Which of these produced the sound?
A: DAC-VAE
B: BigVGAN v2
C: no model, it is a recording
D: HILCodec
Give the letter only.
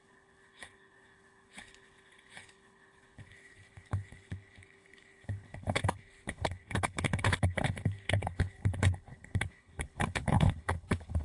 D